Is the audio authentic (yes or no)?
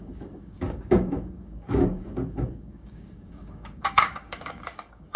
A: no